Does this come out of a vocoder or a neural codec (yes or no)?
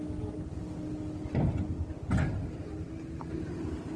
no